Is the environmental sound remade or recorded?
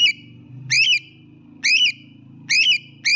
recorded